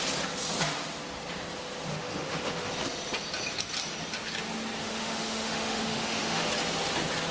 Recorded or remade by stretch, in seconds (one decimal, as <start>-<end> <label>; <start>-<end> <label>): 0.0-1.9 recorded; 1.9-2.7 remade; 2.7-4.8 recorded; 4.8-6.4 remade; 6.4-7.3 recorded